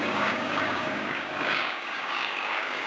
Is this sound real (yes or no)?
no